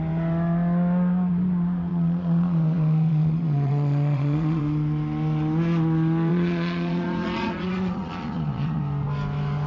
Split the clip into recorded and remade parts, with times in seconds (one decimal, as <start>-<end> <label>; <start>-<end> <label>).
0.0-1.9 recorded; 1.9-4.6 remade; 4.6-6.3 recorded; 6.3-8.8 remade; 8.8-9.7 recorded